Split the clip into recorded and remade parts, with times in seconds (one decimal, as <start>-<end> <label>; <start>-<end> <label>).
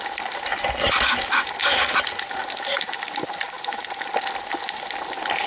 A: 0.0-5.5 recorded